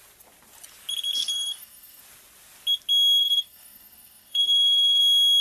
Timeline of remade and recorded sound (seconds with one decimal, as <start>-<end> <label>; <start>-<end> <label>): 0.0-1.2 recorded; 1.2-2.0 remade; 2.0-3.2 recorded; 3.2-5.0 remade; 5.0-5.4 recorded